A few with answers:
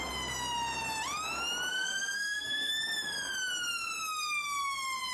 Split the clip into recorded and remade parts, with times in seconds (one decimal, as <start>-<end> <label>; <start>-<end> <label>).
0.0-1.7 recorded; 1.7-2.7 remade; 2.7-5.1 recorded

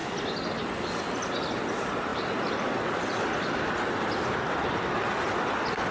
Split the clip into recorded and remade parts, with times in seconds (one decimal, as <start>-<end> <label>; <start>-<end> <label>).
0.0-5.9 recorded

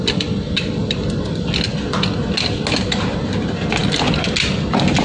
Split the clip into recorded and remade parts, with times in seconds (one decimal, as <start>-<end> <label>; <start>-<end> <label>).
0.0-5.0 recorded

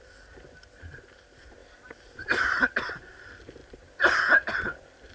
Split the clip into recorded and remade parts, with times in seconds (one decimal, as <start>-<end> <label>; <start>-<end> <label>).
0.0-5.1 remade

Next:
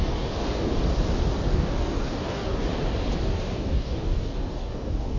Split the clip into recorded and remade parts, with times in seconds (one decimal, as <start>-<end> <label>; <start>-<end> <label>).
0.0-0.8 remade; 0.8-1.5 recorded; 1.5-2.6 remade; 2.6-3.2 recorded; 3.2-5.2 remade

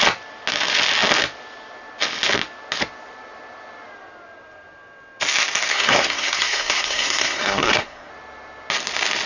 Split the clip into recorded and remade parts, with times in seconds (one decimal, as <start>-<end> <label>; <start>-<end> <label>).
0.0-5.7 recorded; 5.7-8.1 remade; 8.1-9.3 recorded

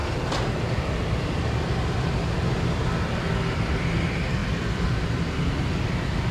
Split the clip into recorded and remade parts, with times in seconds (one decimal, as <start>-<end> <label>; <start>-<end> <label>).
0.0-6.3 recorded